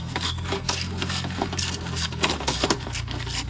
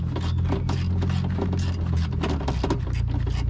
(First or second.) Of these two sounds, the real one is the second